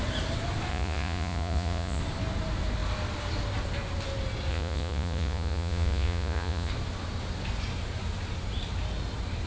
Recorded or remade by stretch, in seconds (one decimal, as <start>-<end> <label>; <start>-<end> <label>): 0.0-0.7 recorded; 0.7-2.0 remade; 2.0-4.5 recorded; 4.5-6.7 remade; 6.7-9.5 recorded